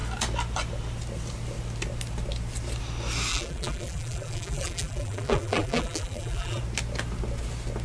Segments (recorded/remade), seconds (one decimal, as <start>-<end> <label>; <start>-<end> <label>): 0.0-3.3 recorded; 3.3-6.6 remade; 6.6-7.8 recorded